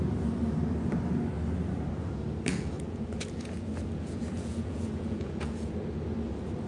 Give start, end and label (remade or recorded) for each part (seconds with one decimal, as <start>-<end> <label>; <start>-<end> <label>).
0.0-2.5 recorded; 2.5-5.8 remade; 5.8-6.7 recorded